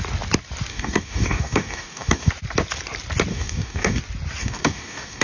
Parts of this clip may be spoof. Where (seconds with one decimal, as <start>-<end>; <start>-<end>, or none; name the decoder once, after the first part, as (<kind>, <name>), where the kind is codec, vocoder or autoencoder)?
0.7-2.3 (codec, DAC); 3.3-4.0; 4.4-5.2